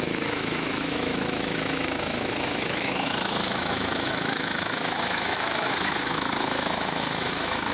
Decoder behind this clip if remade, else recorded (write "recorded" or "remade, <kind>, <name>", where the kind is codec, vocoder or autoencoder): remade, autoencoder, DAC-VAE